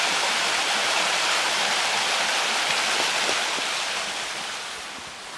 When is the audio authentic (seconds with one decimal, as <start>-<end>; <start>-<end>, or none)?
0.0-0.8; 1.5-5.4